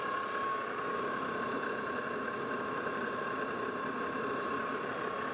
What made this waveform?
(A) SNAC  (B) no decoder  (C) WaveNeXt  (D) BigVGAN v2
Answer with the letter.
B